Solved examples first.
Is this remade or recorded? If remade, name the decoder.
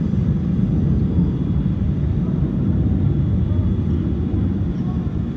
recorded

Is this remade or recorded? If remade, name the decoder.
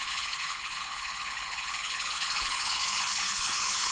remade, codec, HILCodec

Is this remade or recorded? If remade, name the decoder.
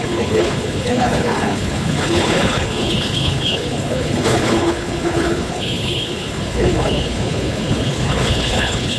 remade, codec, HILCodec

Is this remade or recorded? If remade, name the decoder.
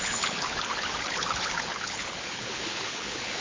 remade, codec, HILCodec